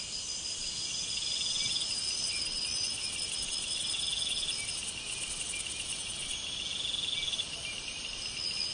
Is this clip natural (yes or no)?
yes